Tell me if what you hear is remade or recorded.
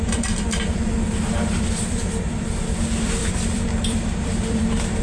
remade